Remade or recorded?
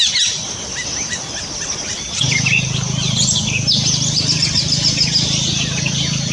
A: recorded